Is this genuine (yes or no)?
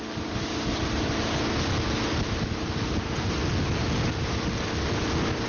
yes